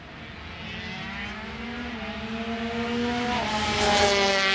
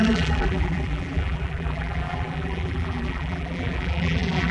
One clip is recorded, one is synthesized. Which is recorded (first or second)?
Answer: first